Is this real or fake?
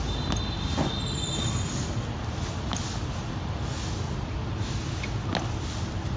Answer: real